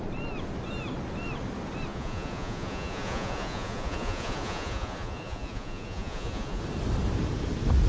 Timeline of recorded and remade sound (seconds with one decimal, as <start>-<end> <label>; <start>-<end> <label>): 0.0-1.9 recorded; 1.9-6.6 remade; 6.6-7.9 recorded